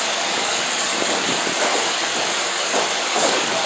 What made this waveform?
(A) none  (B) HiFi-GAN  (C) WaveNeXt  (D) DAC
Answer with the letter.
D